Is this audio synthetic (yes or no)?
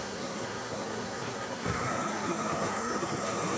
yes